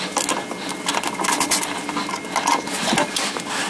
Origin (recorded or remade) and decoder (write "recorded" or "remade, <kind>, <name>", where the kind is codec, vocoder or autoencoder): recorded